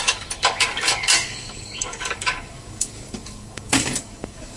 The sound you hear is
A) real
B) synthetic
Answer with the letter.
B